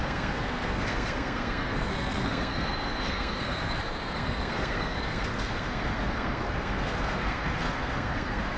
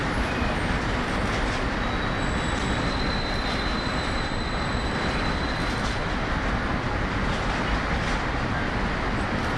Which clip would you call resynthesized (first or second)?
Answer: first